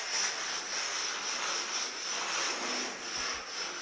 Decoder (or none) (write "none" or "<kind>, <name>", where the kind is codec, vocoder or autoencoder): none